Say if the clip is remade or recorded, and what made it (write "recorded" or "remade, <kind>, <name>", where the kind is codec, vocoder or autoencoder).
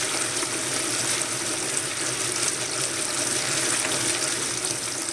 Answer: recorded